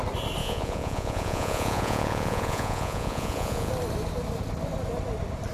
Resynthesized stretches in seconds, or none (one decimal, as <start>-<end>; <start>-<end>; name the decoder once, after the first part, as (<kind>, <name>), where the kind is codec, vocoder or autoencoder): 0.4-3.7 (vocoder, Vocos)